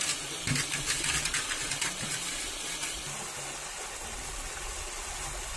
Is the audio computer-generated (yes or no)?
no